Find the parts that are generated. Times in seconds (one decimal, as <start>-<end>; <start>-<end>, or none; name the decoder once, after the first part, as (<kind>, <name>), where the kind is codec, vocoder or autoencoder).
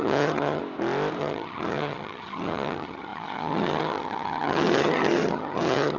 0.0-0.6 (vocoder, HiFi-GAN); 1.2-6.0